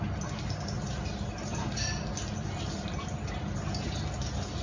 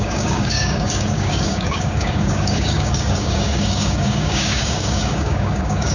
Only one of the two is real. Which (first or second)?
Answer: first